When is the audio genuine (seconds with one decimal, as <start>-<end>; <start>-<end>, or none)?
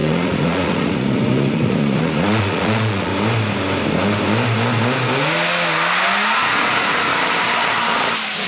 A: 3.1-6.4; 7.1-8.5